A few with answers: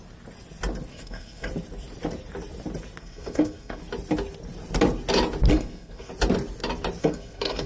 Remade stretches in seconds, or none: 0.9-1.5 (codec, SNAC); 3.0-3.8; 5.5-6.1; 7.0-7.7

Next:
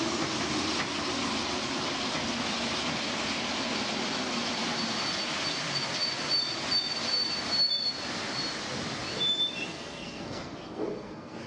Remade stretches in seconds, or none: 9.7-11.5 (codec, SNAC)

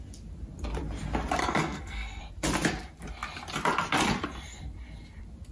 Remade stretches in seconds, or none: 1.4-2.2 (codec, SNAC)

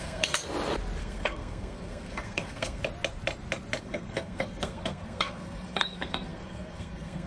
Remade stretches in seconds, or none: 0.0-0.4 (codec, SNAC); 1.0-2.8; 3.8-7.3

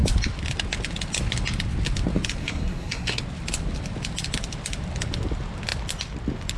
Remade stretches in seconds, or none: 2.4-3.2 (codec, SNAC)